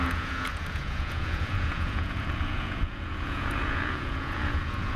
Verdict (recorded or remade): remade